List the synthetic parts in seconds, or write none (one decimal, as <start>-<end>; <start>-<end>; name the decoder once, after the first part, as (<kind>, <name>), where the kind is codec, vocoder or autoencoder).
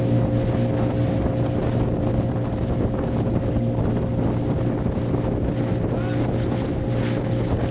none